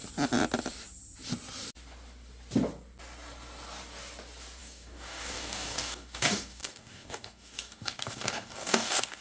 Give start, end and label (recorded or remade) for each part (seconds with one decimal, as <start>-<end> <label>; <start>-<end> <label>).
0.0-4.6 recorded; 4.6-9.2 remade